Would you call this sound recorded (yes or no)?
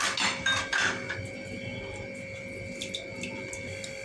yes